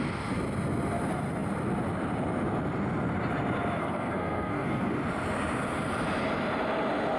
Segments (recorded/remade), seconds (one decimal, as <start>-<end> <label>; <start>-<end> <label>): 0.0-3.8 recorded; 3.8-4.9 remade; 4.9-7.2 recorded